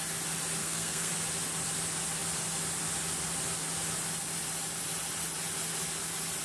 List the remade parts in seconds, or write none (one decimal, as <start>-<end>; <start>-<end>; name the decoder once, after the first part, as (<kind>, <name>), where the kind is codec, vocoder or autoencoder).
0.6-1.1 (codec, SNAC)